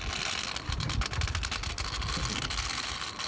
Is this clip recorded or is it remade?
recorded